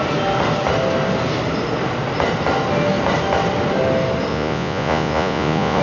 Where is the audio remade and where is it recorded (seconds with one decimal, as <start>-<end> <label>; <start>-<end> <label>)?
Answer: 0.0-4.3 recorded; 4.3-5.8 remade

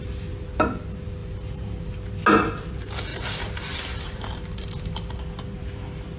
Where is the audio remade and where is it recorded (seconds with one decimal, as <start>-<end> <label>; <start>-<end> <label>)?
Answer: 0.0-1.2 recorded; 1.2-1.9 remade; 1.9-3.1 recorded; 3.1-5.2 remade; 5.2-6.2 recorded

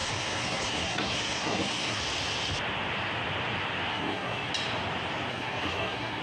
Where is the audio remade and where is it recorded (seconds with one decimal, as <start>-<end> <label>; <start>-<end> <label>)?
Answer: 0.0-2.0 remade; 2.0-3.9 recorded; 3.9-4.5 remade; 4.5-5.3 recorded; 5.3-6.2 remade

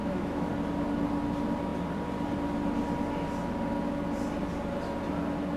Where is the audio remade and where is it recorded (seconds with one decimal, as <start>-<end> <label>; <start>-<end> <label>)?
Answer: 0.0-0.5 remade; 0.5-5.6 recorded

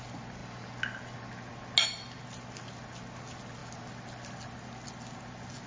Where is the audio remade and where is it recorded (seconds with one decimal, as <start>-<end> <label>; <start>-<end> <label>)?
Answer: 0.0-5.7 recorded